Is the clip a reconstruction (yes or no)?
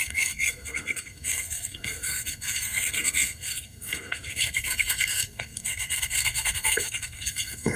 yes